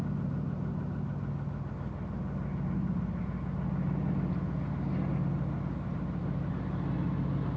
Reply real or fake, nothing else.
real